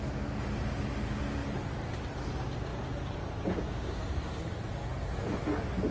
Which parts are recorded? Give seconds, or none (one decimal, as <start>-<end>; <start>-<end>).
0.0-1.4; 2.3-2.7; 4.2-5.9